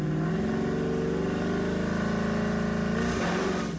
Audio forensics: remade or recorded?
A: recorded